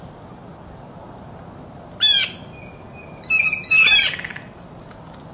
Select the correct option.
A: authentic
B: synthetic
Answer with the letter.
A